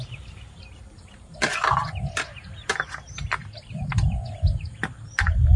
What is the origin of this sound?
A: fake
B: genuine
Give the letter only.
B